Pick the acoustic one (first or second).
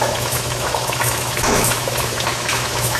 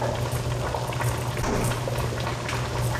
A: second